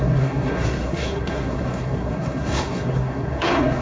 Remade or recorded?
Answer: remade